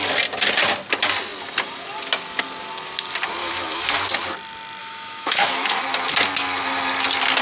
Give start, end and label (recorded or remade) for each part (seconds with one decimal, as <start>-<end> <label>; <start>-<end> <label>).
0.0-3.4 recorded; 3.4-4.0 remade; 4.0-4.8 recorded; 4.8-5.8 remade; 5.8-7.4 recorded